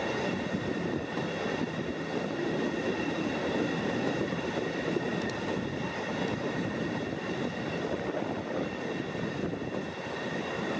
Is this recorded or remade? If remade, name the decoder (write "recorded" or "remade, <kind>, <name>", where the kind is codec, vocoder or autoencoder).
recorded